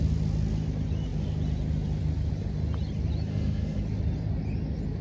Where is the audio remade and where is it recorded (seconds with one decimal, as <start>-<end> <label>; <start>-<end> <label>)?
0.0-3.3 recorded; 3.3-3.8 remade; 3.8-5.0 recorded